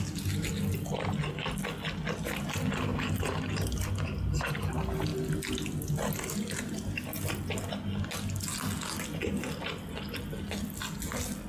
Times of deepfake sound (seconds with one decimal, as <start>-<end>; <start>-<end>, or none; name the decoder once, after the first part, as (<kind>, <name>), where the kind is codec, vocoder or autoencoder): 2.9-3.5 (vocoder, BigVGAN v2)